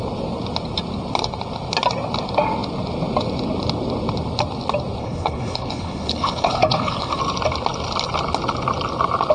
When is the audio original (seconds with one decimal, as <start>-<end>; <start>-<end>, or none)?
0.0-5.0; 7.2-9.3